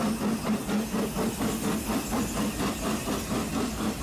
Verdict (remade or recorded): recorded